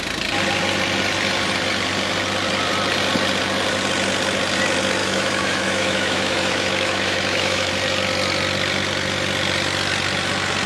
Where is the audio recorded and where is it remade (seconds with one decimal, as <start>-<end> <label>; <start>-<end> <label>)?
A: 0.0-5.0 recorded; 5.0-7.7 remade; 7.7-10.7 recorded